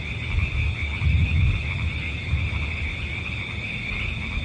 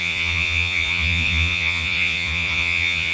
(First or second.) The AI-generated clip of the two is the second